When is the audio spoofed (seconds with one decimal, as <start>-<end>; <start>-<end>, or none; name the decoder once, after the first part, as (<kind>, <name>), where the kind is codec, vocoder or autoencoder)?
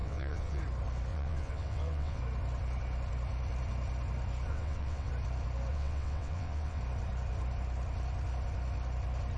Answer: 0.0-0.6 (vocoder, WaveNeXt); 1.1-2.2; 4.5-5.1; 5.7-6.8